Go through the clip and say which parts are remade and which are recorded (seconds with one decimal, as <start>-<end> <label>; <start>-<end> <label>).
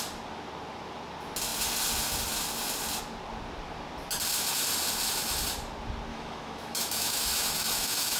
0.0-6.1 recorded; 6.1-8.2 remade